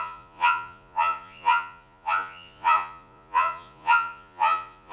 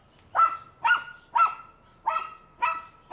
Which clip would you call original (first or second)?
second